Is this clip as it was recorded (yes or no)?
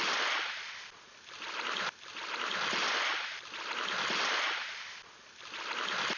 yes